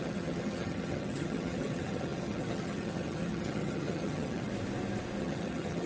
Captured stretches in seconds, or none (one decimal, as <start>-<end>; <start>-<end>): 4.5-5.2